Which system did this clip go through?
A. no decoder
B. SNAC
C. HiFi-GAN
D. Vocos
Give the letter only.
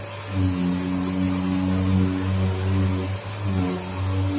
A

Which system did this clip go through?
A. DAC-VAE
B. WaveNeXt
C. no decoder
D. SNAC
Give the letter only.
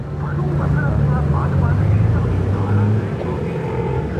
C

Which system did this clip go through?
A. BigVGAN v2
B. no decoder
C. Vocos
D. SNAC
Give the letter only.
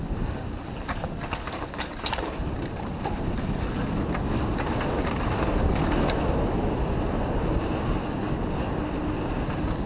B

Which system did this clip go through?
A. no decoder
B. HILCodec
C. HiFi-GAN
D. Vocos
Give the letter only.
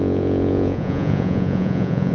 D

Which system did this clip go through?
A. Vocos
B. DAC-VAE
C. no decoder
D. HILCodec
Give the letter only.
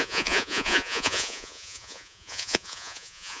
A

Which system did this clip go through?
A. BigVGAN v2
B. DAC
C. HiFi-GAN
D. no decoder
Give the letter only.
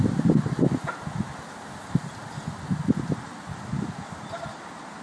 D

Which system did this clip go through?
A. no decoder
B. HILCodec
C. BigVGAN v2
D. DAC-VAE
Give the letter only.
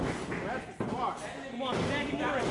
A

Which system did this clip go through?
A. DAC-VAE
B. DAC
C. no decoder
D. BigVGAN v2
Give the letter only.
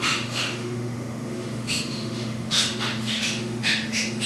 A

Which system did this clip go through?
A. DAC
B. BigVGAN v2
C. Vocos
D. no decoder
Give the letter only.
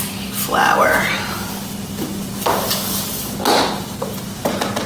D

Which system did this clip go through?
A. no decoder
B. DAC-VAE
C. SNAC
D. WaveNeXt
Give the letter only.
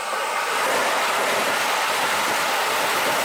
A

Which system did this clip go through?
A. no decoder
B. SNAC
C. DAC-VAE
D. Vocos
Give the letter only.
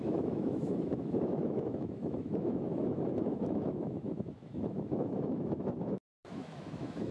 C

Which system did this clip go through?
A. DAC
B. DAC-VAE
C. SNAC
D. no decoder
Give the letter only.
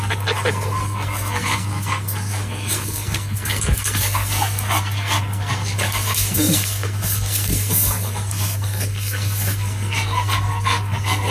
C